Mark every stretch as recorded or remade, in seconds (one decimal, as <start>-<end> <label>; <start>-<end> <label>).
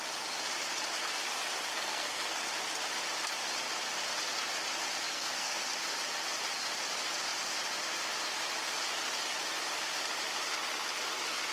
0.0-1.7 recorded; 1.7-2.4 remade; 2.4-5.1 recorded; 5.1-5.7 remade; 5.7-11.5 recorded